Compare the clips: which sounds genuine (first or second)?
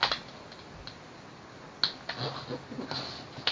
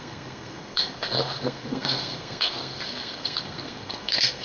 first